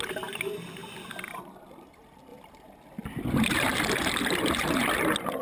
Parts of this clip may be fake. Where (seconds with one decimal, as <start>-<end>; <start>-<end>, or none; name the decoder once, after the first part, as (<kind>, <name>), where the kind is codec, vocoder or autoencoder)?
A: 0.8-1.3 (vocoder, BigVGAN v2); 2.3-3.2